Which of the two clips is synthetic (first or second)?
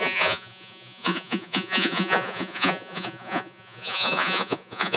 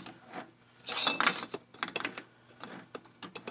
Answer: first